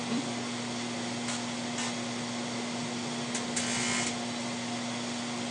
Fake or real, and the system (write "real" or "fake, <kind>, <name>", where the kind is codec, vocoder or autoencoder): real